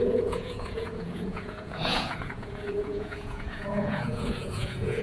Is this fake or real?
fake